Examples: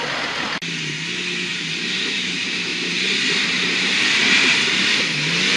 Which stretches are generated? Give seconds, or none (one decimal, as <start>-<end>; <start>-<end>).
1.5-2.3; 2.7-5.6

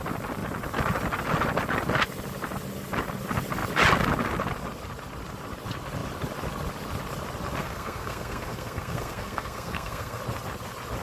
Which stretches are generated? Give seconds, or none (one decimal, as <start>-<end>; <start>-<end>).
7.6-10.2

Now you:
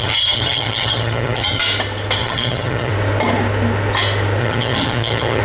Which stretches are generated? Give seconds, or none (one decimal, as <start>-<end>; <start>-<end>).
0.0-1.6; 2.2-2.9; 4.4-5.4

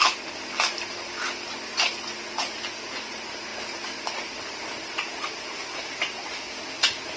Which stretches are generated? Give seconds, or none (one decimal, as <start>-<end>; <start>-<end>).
none

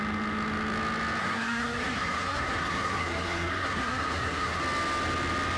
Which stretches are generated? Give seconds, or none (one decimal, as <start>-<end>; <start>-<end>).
1.2-4.6

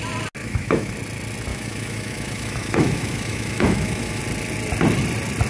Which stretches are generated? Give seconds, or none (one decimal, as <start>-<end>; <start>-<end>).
0.4-0.9; 1.5-4.2